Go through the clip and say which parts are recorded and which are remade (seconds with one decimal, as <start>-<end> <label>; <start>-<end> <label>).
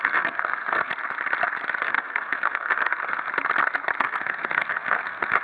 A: 0.0-0.9 remade; 0.9-1.8 recorded; 1.8-3.3 remade; 3.3-4.0 recorded; 4.0-5.4 remade